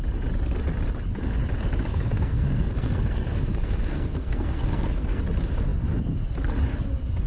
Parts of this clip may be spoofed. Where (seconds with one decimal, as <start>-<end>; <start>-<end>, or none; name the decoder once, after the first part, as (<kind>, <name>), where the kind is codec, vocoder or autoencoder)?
1.9-5.2 (codec, SNAC)